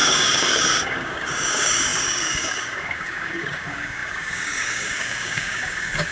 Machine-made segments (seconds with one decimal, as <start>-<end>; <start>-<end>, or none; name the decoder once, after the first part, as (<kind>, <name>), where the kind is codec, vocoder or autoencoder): 0.0-6.1 (codec, DAC)